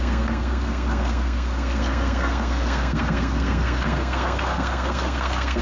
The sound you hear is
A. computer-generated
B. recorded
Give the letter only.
A